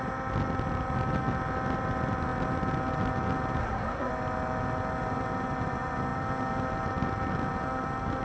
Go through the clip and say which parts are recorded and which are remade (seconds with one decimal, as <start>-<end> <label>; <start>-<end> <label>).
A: 0.0-3.6 recorded; 3.6-4.1 remade; 4.1-8.2 recorded